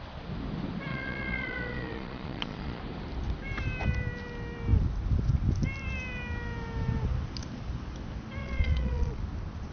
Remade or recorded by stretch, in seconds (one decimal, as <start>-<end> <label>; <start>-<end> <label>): 0.0-0.9 recorded; 0.9-2.8 remade; 2.8-8.4 recorded; 8.4-9.2 remade; 9.2-9.7 recorded